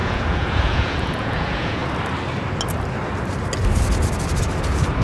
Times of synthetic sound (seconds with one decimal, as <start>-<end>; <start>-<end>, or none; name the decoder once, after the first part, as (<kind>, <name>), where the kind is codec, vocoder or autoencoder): 0.0-1.8 (vocoder, Vocos)